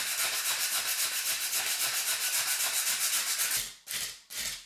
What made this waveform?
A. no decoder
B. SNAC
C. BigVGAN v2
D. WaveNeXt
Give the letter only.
A